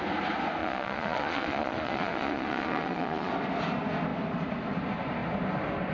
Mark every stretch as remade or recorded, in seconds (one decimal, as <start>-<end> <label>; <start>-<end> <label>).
0.0-0.6 recorded; 0.6-3.3 remade; 3.3-5.9 recorded